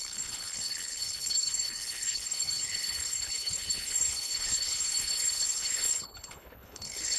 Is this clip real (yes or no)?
no